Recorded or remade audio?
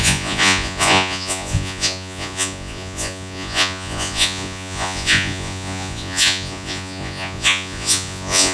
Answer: remade